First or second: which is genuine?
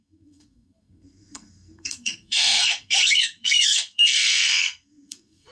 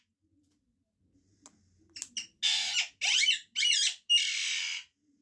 second